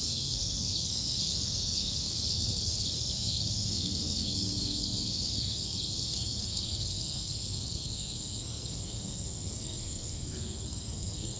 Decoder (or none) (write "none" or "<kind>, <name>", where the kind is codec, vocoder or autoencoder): codec, SNAC